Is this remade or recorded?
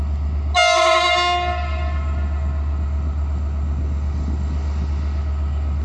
recorded